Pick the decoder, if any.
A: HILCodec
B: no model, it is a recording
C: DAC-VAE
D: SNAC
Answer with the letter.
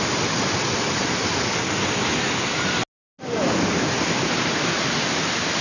B